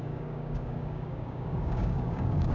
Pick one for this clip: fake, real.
fake